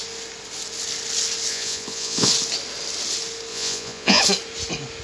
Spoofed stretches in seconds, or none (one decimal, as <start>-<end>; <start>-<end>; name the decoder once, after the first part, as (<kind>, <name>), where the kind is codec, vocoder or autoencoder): 1.5-2.3 (vocoder, Vocos); 3.5-4.2